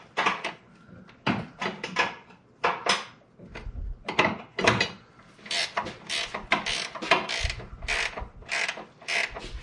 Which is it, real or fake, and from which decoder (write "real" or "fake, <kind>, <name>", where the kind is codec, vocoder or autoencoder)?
real